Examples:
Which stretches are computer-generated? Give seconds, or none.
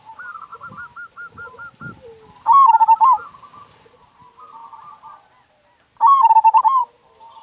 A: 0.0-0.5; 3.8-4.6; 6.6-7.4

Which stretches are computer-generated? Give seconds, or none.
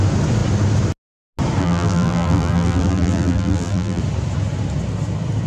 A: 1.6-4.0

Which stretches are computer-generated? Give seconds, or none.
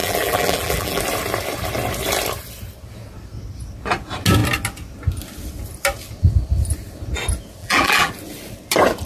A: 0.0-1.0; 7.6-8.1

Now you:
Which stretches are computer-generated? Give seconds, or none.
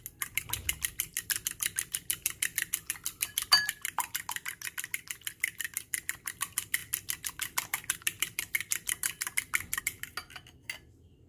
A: none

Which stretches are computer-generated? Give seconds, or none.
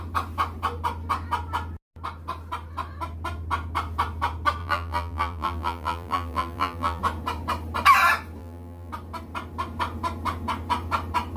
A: 4.6-7.0; 8.4-8.9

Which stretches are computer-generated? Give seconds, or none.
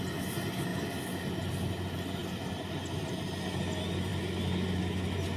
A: 2.2-3.1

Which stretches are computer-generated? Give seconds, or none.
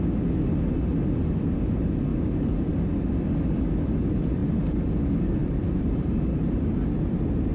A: 2.1-2.8; 5.4-6.6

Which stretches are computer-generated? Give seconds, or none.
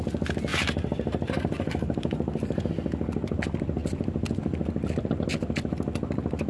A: 0.5-2.7